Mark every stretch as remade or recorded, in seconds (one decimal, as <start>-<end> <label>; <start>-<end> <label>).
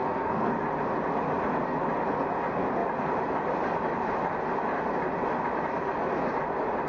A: 0.0-0.5 remade; 0.5-6.9 recorded